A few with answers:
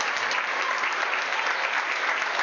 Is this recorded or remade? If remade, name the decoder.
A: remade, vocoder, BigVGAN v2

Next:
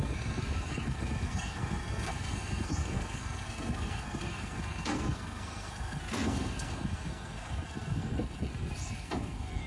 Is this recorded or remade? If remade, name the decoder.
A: remade, codec, SNAC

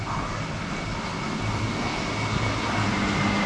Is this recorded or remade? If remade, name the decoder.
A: recorded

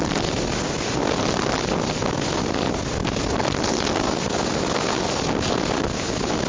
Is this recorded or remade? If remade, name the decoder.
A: recorded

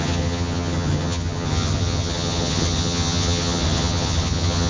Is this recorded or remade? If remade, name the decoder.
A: remade, vocoder, HiFi-GAN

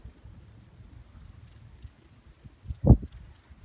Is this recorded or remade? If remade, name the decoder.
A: recorded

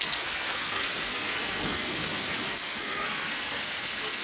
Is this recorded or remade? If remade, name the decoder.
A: remade, codec, SNAC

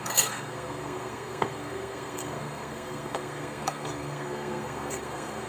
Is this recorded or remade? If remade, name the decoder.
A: remade, codec, SNAC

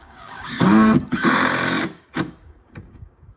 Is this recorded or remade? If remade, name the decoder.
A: remade, codec, DAC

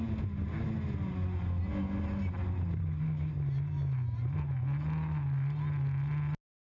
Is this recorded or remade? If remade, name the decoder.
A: recorded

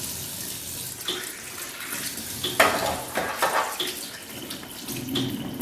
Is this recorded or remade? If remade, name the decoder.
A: recorded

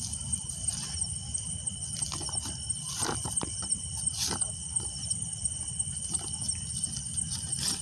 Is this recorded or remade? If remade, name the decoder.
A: recorded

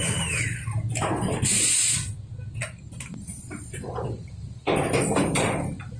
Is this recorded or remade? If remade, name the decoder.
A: recorded